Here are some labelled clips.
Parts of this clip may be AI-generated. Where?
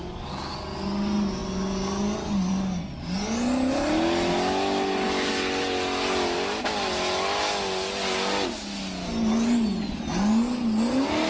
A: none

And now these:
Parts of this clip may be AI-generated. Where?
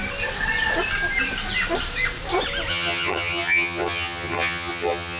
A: 2.7-5.2 (vocoder, HiFi-GAN)